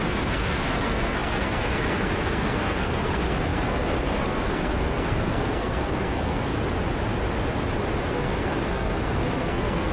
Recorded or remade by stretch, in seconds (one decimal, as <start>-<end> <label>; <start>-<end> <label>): 0.0-6.5 remade; 6.5-8.1 recorded; 8.1-9.9 remade